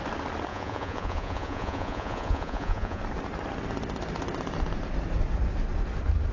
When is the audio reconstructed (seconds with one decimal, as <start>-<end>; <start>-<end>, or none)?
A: 0.5-3.0